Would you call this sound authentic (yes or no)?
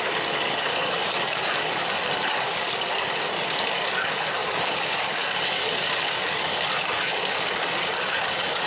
no